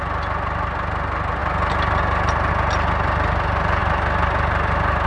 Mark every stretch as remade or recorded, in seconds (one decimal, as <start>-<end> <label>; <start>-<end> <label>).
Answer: 0.0-5.1 recorded